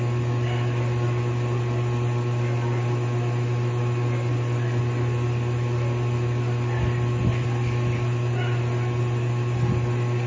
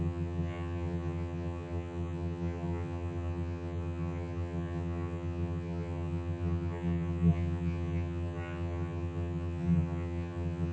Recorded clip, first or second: first